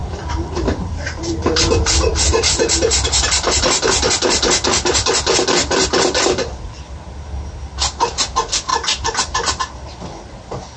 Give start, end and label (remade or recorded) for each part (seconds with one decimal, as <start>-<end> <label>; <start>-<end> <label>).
0.0-1.6 remade; 1.6-8.7 recorded; 8.7-9.6 remade; 9.6-10.8 recorded